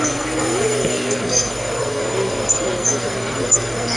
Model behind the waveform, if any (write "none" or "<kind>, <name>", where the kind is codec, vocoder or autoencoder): codec, SNAC